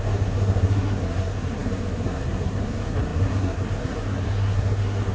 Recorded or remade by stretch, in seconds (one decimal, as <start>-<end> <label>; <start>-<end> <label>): 0.0-5.1 remade